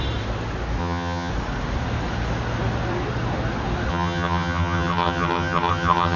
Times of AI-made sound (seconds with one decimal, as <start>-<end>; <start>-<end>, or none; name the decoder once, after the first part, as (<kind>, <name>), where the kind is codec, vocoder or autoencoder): 0.8-1.3 (vocoder, HiFi-GAN); 3.9-6.2